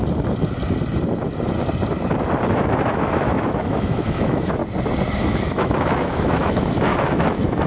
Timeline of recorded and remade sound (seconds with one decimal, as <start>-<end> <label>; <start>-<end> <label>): 0.0-2.5 recorded; 2.5-4.6 remade; 4.6-5.2 recorded; 5.2-7.7 remade